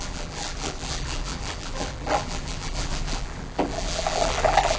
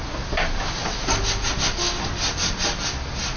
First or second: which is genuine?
second